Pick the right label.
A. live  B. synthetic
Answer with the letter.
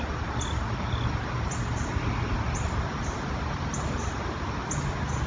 A